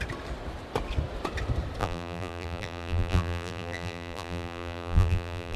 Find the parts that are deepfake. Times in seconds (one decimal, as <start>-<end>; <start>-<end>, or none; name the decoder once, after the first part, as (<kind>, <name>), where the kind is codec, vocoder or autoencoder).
1.8-5.6 (vocoder, BigVGAN v2)